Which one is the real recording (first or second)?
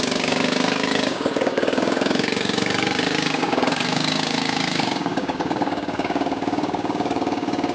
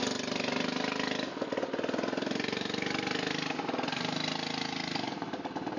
second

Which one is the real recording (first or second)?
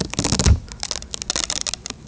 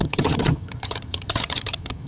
first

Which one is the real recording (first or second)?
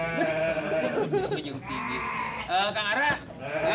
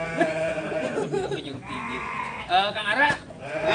first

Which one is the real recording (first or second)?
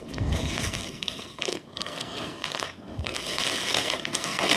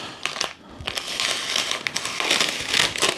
second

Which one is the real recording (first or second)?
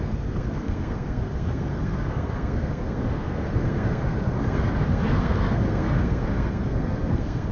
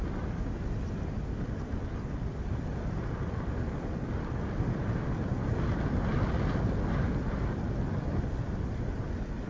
second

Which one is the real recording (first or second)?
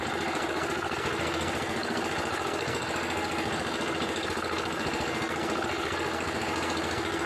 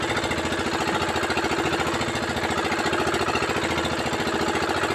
second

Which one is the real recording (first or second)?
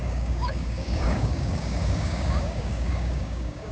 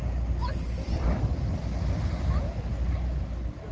second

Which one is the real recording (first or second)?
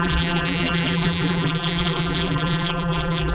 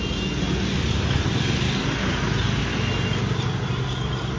second